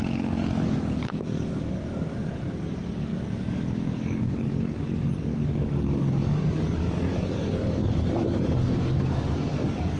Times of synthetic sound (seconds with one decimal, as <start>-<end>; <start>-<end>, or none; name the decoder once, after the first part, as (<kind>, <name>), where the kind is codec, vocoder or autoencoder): 0.0-10.0 (codec, DAC)

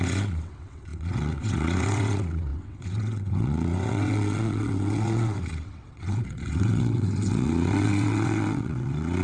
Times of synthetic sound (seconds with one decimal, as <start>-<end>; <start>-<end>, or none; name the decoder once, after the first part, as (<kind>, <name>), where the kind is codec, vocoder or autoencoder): 0.0-9.2 (vocoder, WaveNeXt)

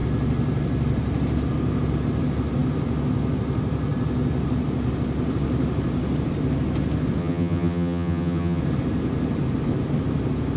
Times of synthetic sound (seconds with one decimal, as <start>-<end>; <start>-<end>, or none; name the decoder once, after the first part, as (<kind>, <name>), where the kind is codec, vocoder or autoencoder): 7.2-8.6 (vocoder, HiFi-GAN)

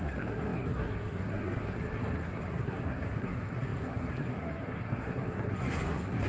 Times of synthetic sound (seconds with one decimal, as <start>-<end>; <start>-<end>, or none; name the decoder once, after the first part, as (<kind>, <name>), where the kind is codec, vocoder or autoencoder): 0.0-6.3 (codec, SNAC)

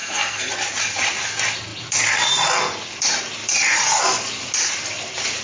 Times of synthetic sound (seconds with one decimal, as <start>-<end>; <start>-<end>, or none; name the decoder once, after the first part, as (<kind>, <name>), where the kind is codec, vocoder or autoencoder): 0.0-0.5 (codec, SNAC)